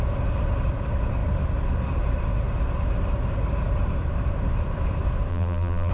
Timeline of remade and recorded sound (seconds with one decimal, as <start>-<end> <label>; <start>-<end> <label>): 0.0-5.3 recorded; 5.3-5.9 remade